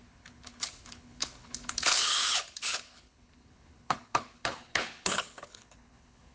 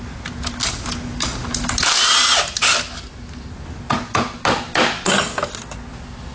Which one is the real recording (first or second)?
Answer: second